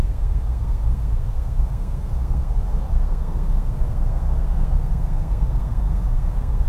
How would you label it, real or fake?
fake